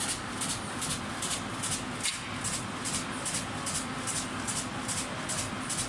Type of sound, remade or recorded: recorded